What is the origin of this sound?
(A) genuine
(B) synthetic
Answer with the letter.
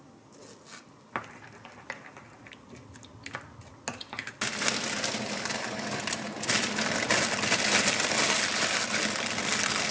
A